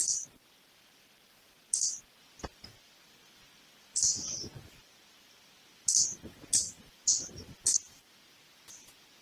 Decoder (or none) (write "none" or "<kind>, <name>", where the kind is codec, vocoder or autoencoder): none